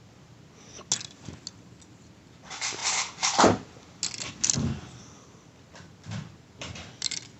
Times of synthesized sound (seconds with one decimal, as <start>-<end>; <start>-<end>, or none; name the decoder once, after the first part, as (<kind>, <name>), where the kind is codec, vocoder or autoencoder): none